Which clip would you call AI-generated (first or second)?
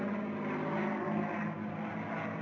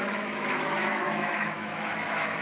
second